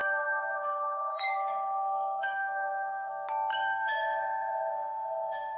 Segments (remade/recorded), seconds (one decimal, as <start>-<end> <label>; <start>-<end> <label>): 0.0-3.1 remade; 3.1-3.5 recorded; 3.5-5.6 remade